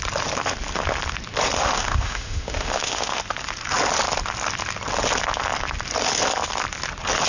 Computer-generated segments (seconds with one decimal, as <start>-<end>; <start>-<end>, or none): 1.6-3.2